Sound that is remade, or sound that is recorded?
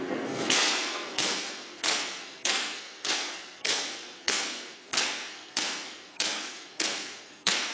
remade